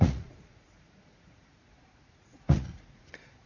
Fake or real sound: fake